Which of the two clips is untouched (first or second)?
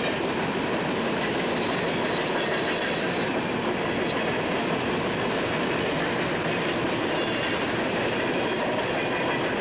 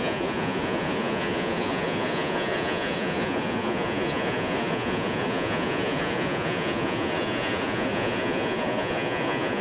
first